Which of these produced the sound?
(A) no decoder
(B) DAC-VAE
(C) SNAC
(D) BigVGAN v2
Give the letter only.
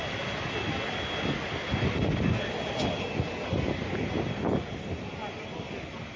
A